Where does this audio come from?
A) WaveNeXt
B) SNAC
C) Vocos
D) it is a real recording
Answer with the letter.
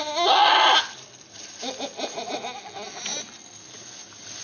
D